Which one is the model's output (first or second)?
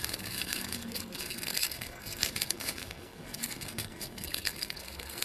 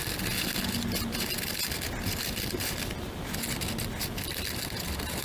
first